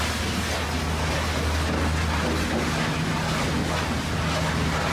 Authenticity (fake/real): real